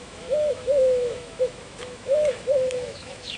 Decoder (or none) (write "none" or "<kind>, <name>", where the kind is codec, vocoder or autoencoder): autoencoder, DAC-VAE